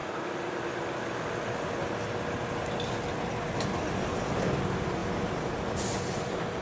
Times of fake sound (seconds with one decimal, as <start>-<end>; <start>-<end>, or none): none